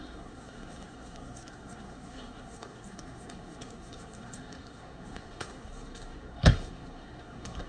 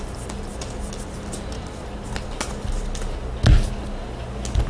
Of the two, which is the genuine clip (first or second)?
second